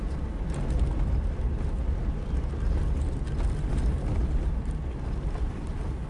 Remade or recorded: recorded